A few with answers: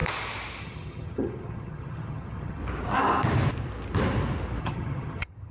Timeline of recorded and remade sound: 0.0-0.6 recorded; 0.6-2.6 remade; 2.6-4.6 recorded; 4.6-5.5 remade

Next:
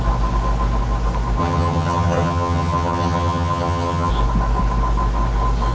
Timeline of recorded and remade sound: 0.0-1.4 recorded; 1.4-4.1 remade; 4.1-5.7 recorded

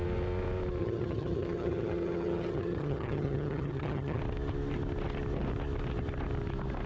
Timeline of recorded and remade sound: 0.0-0.8 recorded; 0.8-4.2 remade; 4.2-6.9 recorded

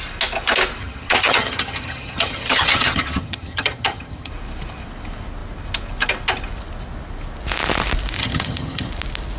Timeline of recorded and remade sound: 0.0-0.8 recorded; 0.8-4.3 remade; 4.3-8.2 recorded; 8.2-8.9 remade; 8.9-9.4 recorded